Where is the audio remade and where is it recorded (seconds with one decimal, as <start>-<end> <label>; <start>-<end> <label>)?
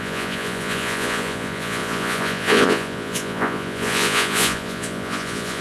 0.0-5.6 remade